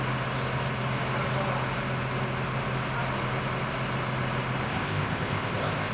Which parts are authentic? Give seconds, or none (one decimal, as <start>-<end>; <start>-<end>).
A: 0.0-4.7